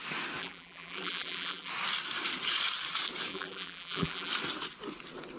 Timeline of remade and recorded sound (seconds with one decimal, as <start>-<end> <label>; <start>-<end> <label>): 0.0-0.4 recorded; 0.4-1.7 remade; 1.7-3.3 recorded; 3.3-4.3 remade; 4.3-5.4 recorded